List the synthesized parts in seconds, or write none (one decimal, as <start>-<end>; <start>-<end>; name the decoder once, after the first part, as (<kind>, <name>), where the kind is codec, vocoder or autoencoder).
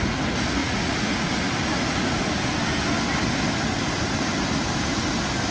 0.6-1.4 (vocoder, Vocos)